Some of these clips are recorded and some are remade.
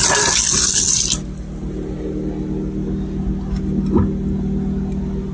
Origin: recorded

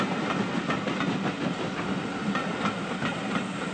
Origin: recorded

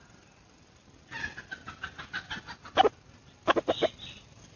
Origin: recorded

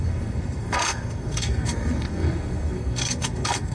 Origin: remade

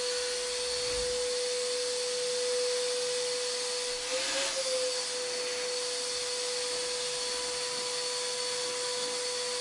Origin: recorded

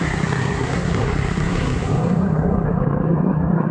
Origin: remade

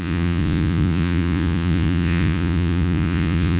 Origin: remade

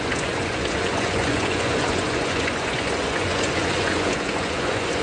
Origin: remade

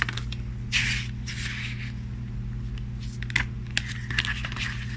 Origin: recorded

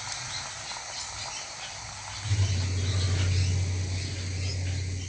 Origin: recorded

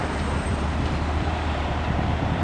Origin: remade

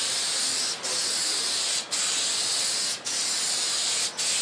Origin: recorded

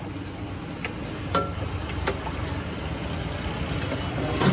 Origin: recorded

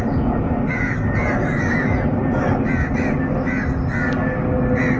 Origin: recorded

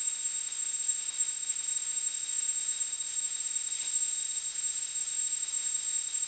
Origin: remade